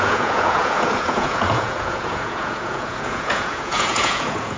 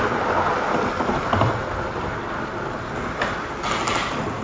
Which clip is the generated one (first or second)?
first